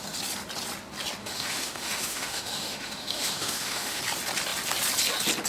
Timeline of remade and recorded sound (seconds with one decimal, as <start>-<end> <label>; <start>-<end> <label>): 0.0-1.2 recorded; 1.2-4.0 remade; 4.0-5.5 recorded